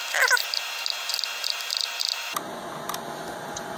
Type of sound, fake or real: real